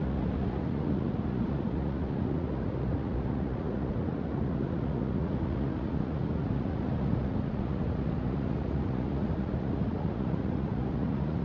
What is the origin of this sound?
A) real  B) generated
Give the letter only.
B